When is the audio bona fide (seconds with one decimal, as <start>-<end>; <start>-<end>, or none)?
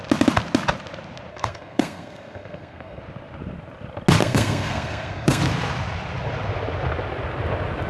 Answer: 0.0-1.3; 3.0-4.2; 5.4-7.9